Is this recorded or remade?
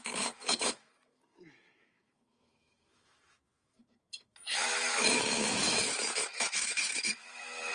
remade